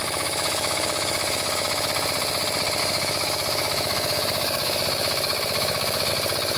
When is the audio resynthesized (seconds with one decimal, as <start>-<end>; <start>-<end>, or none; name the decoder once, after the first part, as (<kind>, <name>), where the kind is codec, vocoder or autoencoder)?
0.0-1.9 (autoencoder, DAC-VAE); 2.8-6.1